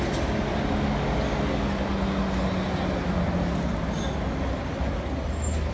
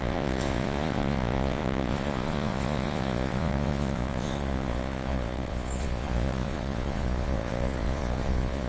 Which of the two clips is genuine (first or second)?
first